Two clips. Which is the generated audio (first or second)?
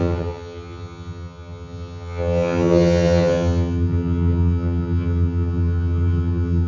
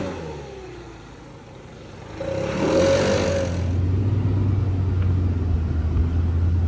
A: first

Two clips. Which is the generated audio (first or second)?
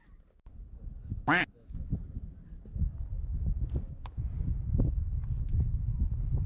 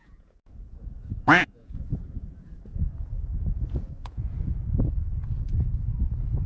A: second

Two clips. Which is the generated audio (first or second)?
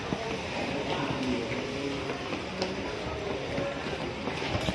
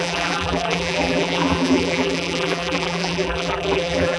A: second